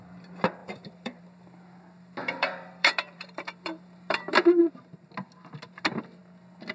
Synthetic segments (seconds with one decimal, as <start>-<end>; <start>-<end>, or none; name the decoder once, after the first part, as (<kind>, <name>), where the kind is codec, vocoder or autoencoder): 0.6-1.2 (vocoder, BigVGAN v2); 2.2-4.6